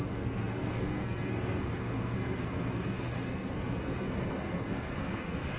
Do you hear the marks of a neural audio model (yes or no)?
yes